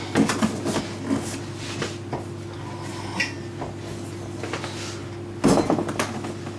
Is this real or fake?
real